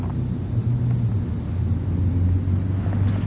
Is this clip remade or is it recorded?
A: recorded